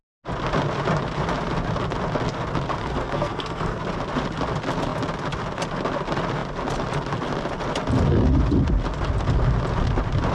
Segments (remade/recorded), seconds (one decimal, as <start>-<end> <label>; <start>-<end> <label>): 0.0-2.8 recorded; 2.8-3.8 remade; 3.8-10.3 recorded